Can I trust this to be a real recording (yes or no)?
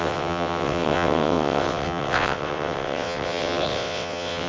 no